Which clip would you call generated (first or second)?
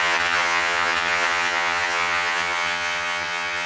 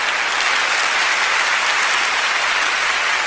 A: first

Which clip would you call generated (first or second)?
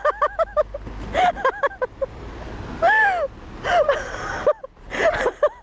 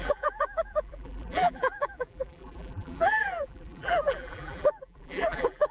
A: second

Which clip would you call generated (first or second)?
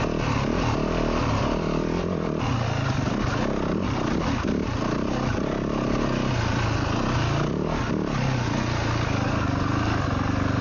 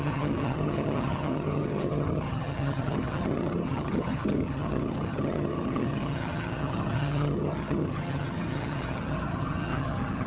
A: second